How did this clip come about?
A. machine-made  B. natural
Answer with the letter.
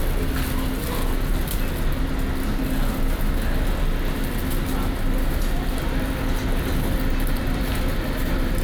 B